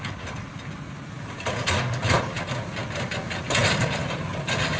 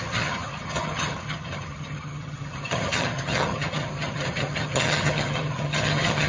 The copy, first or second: second